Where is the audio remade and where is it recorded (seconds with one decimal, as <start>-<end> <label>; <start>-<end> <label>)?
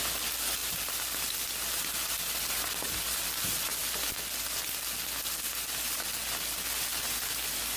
0.0-7.8 recorded